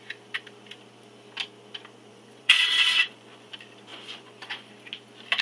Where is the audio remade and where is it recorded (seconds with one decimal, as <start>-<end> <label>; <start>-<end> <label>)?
0.0-2.1 recorded; 2.1-3.5 remade; 3.5-3.9 recorded; 3.9-4.7 remade; 4.7-5.4 recorded